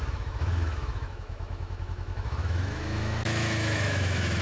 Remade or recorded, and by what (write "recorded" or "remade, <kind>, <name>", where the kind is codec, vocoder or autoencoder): remade, autoencoder, DAC-VAE